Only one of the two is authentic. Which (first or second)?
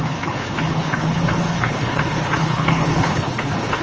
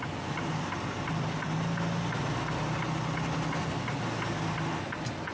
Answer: second